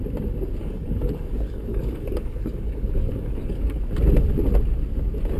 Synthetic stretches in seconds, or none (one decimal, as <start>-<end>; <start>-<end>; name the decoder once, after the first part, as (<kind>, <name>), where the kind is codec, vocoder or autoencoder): 0.6-3.8 (codec, DAC)